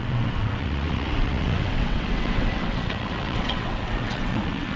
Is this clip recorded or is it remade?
remade